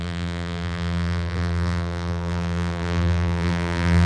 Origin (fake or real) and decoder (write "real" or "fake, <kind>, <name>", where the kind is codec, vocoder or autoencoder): fake, vocoder, BigVGAN v2